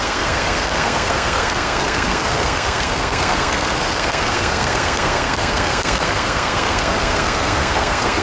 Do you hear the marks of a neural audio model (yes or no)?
yes